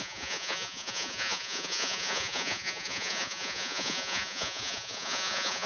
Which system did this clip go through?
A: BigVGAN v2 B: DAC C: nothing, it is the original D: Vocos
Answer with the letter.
D